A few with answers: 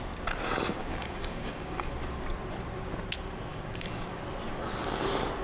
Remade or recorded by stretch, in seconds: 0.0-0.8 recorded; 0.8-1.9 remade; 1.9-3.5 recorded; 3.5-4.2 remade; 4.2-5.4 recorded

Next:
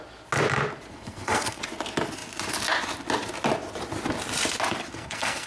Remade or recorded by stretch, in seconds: 0.0-0.9 recorded; 0.9-1.6 remade; 1.6-4.9 recorded; 4.9-5.5 remade

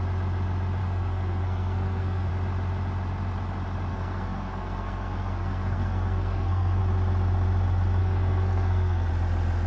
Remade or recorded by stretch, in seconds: 0.0-0.8 recorded; 0.8-2.3 remade; 2.3-3.9 recorded; 3.9-6.8 remade; 6.8-8.0 recorded; 8.0-9.1 remade; 9.1-9.7 recorded